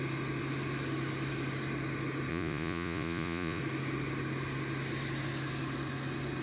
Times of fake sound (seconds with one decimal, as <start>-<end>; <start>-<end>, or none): 2.3-3.6